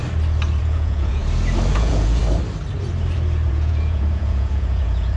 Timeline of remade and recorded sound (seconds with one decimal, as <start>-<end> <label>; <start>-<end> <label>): 0.0-0.6 recorded; 0.6-1.2 remade; 1.2-1.7 recorded; 1.7-2.2 remade; 2.2-3.5 recorded; 3.5-5.2 remade